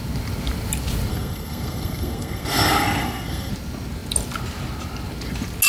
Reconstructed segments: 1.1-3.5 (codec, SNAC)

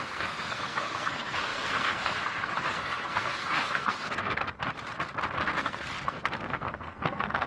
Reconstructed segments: 0.0-4.4 (codec, SNAC); 5.5-7.5

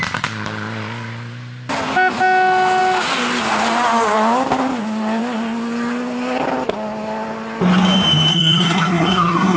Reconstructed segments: 8.3-9.6 (codec, SNAC)

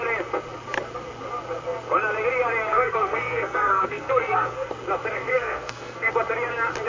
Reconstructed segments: 2.7-4.7 (codec, SNAC); 5.3-6.1